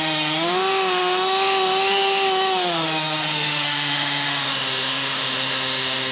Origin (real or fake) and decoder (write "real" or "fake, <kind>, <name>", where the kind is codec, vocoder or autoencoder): fake, autoencoder, DAC-VAE